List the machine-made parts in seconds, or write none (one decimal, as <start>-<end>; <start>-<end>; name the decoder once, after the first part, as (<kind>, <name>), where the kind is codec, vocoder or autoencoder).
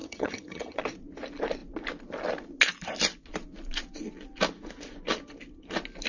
0.0-0.8 (vocoder, HiFi-GAN)